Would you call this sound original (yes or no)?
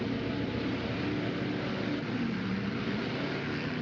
yes